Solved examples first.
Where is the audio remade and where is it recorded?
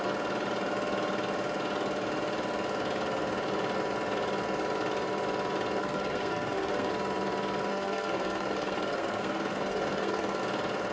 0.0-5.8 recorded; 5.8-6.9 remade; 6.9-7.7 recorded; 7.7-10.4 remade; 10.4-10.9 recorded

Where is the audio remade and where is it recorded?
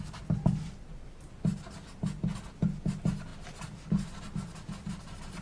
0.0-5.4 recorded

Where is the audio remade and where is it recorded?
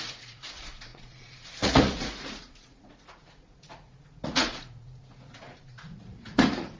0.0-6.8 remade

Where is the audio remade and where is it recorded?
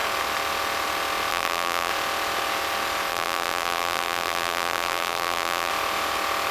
0.0-1.3 recorded; 1.3-1.9 remade; 1.9-3.1 recorded; 3.1-5.7 remade; 5.7-6.5 recorded